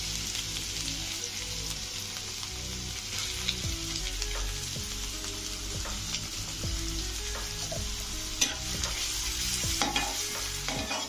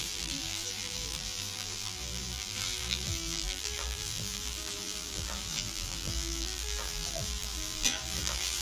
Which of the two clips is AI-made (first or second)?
second